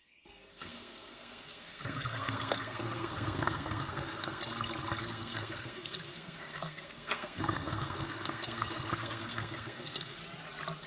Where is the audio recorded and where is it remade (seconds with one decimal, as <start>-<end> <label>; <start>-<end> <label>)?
0.0-4.4 remade; 4.4-5.0 recorded; 5.0-10.2 remade; 10.2-10.9 recorded